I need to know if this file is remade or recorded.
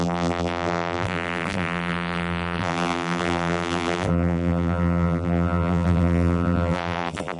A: remade